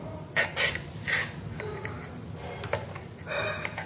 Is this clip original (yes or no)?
yes